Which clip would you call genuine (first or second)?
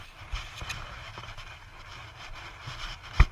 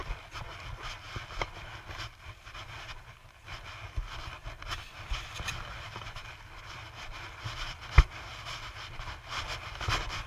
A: second